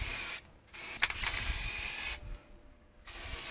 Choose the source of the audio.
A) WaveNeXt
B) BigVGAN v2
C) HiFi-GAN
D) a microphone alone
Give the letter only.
D